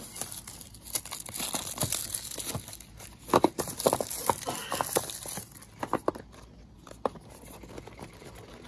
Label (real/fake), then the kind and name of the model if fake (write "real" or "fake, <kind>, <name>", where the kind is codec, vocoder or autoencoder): real